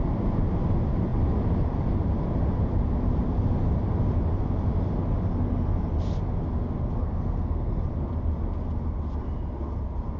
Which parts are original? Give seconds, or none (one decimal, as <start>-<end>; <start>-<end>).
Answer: 0.0-7.0; 7.8-10.2